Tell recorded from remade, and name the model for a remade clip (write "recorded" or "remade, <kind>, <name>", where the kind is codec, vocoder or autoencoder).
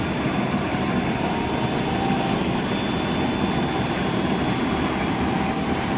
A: recorded